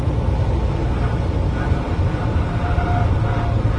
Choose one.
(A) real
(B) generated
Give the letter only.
A